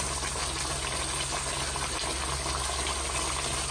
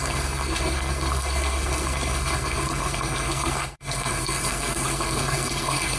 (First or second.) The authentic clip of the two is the first